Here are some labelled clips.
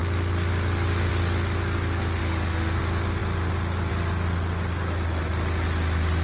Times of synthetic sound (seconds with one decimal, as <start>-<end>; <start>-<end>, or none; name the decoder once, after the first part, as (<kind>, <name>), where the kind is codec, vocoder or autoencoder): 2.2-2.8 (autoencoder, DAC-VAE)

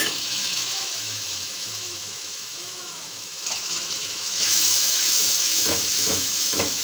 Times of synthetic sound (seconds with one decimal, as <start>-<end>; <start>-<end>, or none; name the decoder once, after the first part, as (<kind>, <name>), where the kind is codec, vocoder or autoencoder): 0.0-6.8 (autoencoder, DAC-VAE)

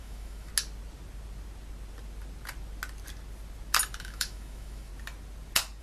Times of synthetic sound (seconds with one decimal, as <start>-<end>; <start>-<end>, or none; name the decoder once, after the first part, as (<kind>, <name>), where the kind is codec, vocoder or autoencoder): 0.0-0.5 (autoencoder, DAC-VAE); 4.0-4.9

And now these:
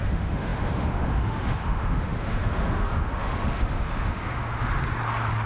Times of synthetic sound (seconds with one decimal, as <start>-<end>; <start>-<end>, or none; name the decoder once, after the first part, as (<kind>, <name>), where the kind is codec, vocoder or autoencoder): 0.0-4.8 (autoencoder, DAC-VAE)